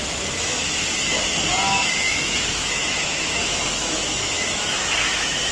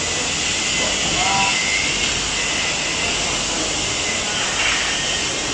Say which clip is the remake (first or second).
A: first